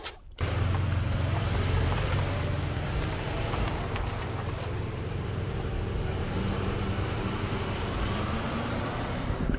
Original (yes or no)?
no